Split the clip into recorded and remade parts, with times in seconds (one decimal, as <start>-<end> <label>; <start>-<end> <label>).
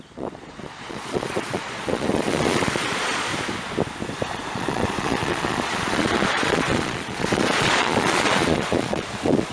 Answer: 0.0-3.3 remade; 3.3-4.3 recorded; 4.3-9.5 remade